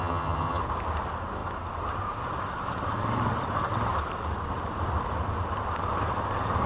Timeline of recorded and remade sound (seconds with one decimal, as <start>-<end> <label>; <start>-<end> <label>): 0.0-0.6 remade; 0.6-6.7 recorded